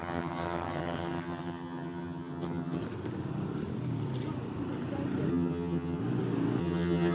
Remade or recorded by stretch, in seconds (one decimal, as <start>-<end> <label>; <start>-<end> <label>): 0.0-2.8 remade; 2.8-5.3 recorded; 5.3-6.0 remade; 6.0-6.6 recorded; 6.6-7.1 remade